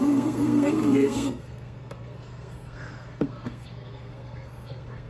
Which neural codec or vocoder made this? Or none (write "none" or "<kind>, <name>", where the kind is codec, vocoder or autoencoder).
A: codec, SNAC